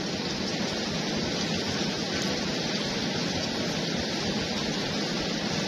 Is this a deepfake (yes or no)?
no